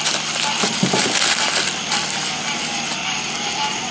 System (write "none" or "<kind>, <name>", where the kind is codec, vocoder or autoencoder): none